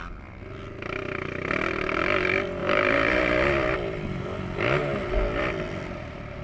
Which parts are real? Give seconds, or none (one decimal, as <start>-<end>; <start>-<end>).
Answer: 0.0-2.6; 3.3-6.4